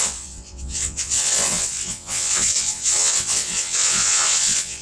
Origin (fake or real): fake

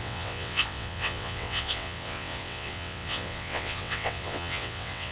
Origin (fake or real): fake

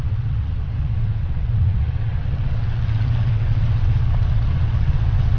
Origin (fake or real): fake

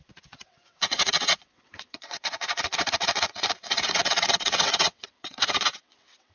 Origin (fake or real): fake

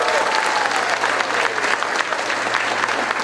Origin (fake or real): real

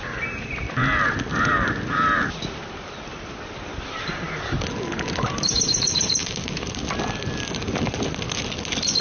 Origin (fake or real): real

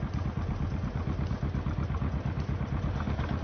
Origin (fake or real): real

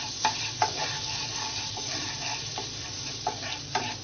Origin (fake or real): real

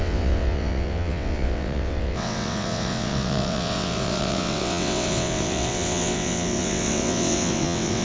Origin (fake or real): fake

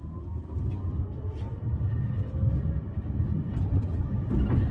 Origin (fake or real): real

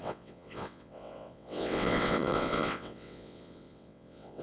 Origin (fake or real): fake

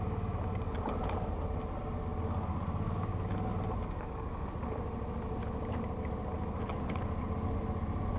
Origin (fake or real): real